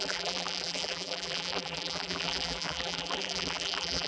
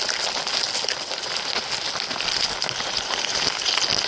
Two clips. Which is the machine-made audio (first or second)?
first